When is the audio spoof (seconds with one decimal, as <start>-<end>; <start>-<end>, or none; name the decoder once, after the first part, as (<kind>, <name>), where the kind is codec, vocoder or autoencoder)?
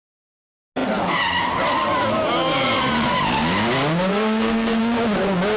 4.1-4.8 (codec, SNAC)